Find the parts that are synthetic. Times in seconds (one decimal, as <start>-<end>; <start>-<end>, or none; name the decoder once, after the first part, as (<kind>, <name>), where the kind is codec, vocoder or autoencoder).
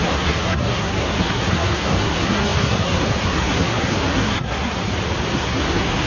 0.0-4.8 (codec, SNAC); 5.3-6.1